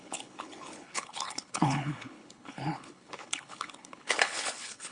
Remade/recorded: remade